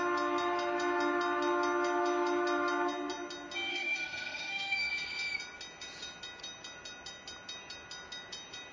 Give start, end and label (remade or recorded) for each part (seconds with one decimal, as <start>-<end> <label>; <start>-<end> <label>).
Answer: 0.0-3.7 recorded; 3.7-4.9 remade; 4.9-8.7 recorded